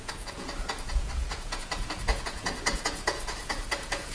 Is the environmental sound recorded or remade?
remade